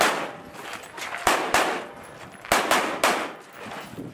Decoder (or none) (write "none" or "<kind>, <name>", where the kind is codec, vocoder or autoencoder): none